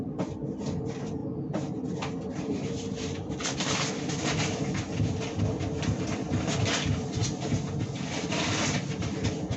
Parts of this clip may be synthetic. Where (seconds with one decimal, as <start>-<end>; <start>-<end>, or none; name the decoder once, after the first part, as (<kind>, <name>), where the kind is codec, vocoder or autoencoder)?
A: none